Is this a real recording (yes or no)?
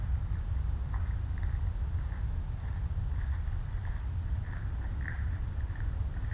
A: yes